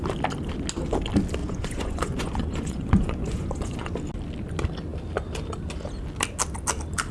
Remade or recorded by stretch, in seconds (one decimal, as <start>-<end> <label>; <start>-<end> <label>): 0.0-1.4 recorded; 1.4-3.9 remade; 3.9-7.1 recorded